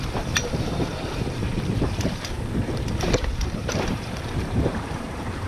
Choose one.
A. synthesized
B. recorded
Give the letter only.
A